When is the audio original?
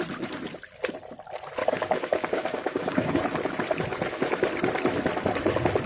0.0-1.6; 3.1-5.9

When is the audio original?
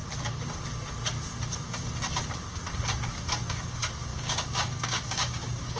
0.0-3.5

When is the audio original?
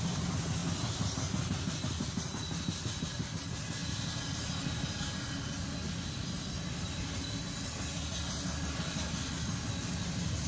0.0-10.5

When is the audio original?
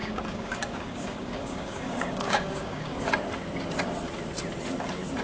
3.1-5.2